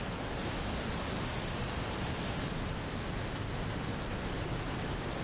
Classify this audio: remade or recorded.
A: recorded